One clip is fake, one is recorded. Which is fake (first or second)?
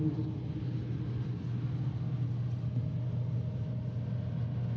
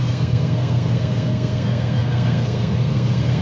second